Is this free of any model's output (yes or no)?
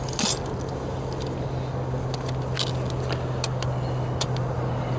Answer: yes